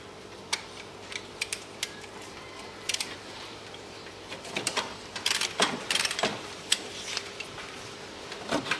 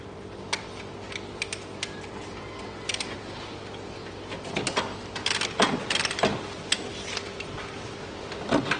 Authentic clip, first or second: second